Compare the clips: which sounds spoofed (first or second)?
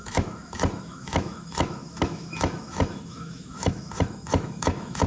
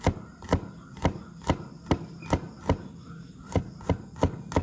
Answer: first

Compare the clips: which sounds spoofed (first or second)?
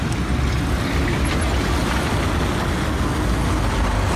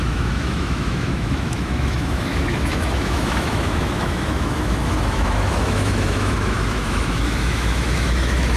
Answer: second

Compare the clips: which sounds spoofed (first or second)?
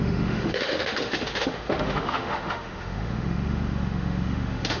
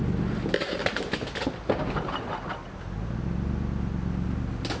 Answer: first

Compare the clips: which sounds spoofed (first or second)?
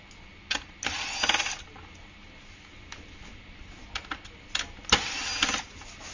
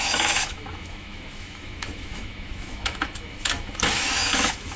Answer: second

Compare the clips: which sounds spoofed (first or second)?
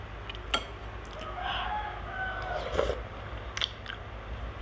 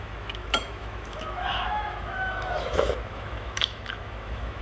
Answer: second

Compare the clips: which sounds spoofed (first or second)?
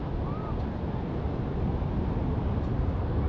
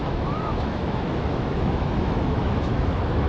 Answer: second